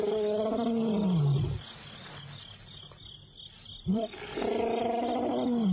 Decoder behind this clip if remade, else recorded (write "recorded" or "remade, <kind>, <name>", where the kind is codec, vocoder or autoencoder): recorded